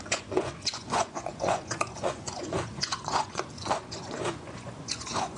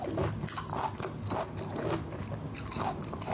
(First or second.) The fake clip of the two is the first